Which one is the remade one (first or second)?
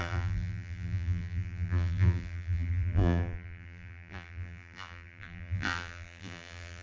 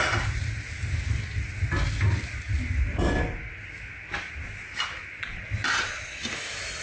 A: first